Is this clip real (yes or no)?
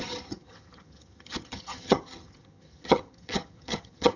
no